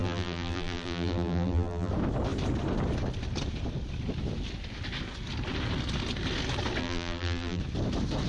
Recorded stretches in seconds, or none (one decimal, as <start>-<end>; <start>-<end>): 1.9-6.8; 7.6-8.3